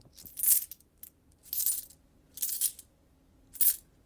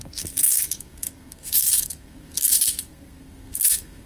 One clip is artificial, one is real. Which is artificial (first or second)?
second